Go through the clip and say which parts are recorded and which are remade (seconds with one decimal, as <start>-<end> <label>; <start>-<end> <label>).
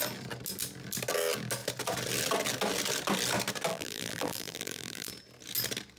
0.0-3.7 recorded; 3.7-5.1 remade; 5.1-6.0 recorded